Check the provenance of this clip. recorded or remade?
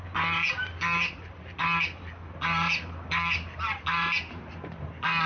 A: remade